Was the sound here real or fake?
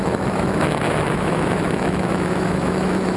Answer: fake